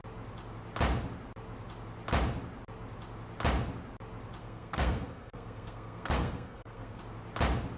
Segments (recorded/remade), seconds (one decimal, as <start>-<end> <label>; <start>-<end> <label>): 0.0-4.4 recorded; 4.4-7.0 remade; 7.0-7.8 recorded